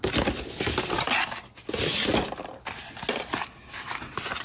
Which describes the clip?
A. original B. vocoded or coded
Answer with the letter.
A